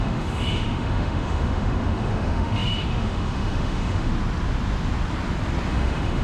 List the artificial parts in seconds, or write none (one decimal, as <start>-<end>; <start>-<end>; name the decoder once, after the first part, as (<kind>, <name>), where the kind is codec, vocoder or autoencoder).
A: 0.0-4.1 (autoencoder, DAC-VAE); 5.7-6.2